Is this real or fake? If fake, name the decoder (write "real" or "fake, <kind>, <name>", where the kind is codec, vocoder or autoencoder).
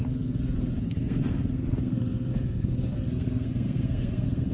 fake, codec, SNAC